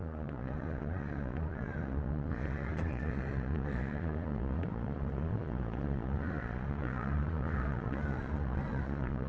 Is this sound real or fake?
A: fake